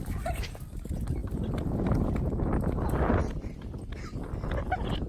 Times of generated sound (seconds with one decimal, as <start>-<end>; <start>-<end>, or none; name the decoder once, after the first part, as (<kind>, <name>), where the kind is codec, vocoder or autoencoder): 1.2-4.3 (vocoder, BigVGAN v2)